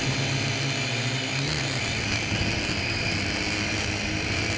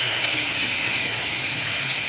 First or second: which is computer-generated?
second